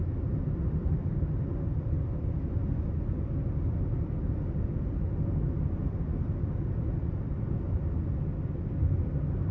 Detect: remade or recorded recorded